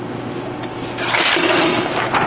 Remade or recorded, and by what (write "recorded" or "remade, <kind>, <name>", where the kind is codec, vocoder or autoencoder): recorded